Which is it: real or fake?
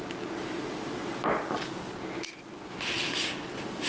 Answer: real